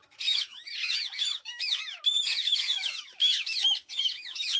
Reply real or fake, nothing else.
fake